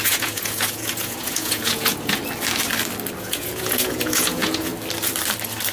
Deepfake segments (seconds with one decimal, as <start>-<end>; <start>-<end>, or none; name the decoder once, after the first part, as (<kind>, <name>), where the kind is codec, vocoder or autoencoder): 0.0-2.2 (vocoder, Vocos); 3.2-4.7